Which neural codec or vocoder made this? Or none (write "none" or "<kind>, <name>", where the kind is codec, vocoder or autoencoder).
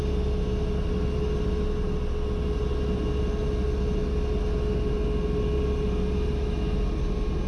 none